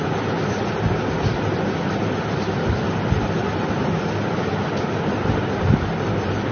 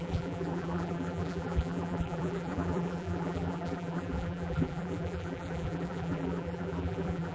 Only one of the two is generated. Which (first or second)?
second